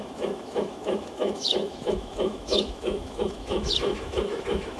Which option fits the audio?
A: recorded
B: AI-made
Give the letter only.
B